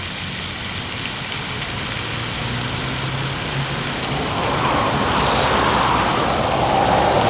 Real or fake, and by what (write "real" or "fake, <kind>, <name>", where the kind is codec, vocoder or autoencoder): real